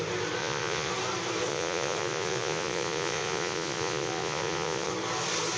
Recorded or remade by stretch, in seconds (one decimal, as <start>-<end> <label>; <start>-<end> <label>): 0.0-0.4 recorded; 0.4-0.9 remade; 0.9-1.5 recorded; 1.5-4.9 remade; 4.9-5.6 recorded